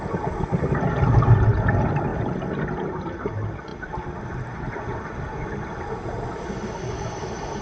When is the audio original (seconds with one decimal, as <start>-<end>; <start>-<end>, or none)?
0.0-7.6